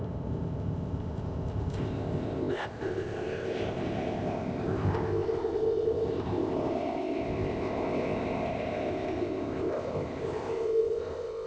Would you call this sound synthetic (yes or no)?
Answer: yes